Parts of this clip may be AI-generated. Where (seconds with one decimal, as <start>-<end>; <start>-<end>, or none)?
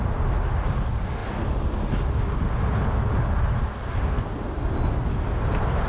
none